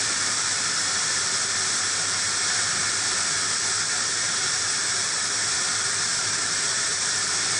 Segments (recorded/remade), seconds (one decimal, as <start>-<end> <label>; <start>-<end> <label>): 0.0-7.6 remade